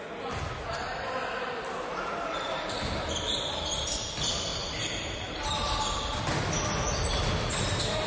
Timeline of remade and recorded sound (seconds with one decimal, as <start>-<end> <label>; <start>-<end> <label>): 0.0-4.5 recorded; 4.5-6.2 remade; 6.2-8.1 recorded